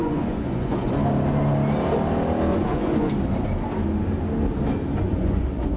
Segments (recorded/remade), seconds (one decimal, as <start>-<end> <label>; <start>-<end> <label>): 0.0-0.9 remade; 0.9-2.5 recorded; 2.5-3.1 remade; 3.1-5.1 recorded; 5.1-5.8 remade